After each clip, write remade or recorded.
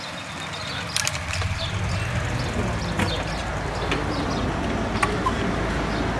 recorded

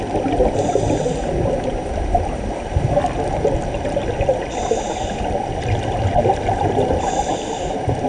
recorded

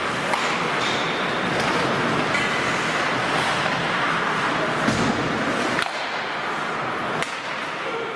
recorded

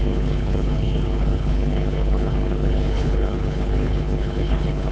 remade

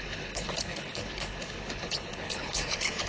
remade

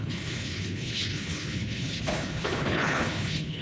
remade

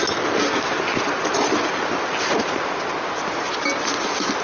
recorded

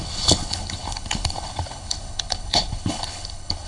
remade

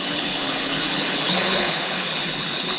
remade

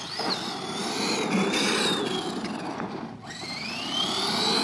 recorded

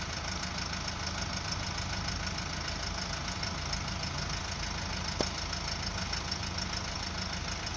recorded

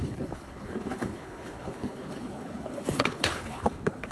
remade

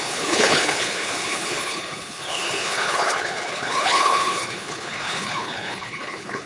remade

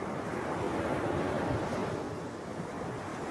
recorded